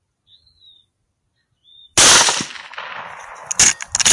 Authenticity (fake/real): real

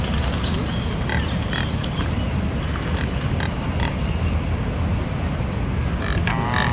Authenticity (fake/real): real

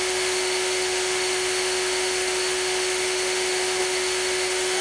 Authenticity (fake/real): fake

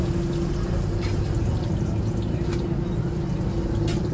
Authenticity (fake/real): real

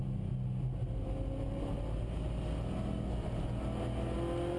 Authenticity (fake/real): real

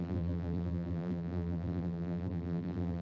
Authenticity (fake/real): fake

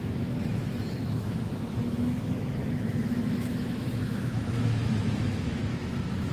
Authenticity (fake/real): fake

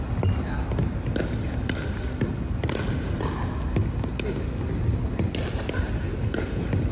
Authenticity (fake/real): real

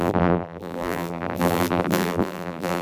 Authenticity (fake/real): fake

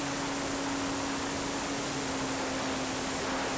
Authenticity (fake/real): real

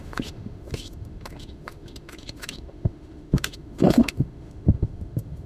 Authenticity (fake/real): fake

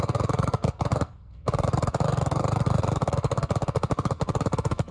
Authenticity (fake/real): fake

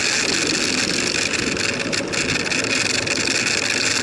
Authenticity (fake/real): real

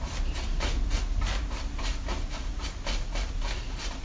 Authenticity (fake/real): real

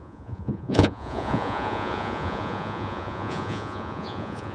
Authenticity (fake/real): fake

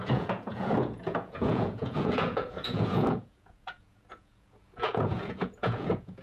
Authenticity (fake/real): fake